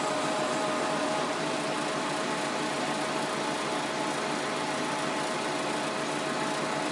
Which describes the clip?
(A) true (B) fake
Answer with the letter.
A